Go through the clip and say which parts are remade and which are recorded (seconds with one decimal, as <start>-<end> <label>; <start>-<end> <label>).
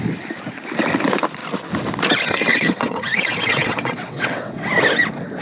0.0-2.5 recorded; 2.5-4.7 remade; 4.7-5.4 recorded